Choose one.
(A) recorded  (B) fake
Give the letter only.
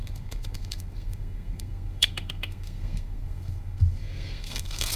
B